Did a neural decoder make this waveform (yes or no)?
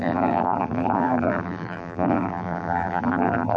yes